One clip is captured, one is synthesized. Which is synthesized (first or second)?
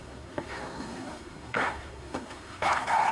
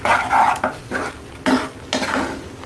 first